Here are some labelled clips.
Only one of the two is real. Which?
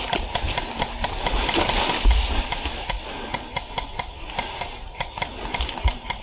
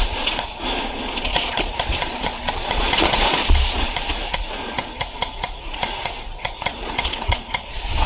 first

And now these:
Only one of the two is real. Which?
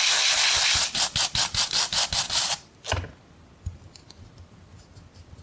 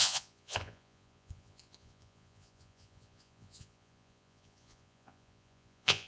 first